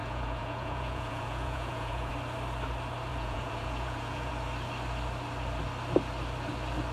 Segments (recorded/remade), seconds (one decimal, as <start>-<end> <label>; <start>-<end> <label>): 0.0-2.1 remade; 2.1-3.1 recorded; 3.1-4.3 remade; 4.3-6.9 recorded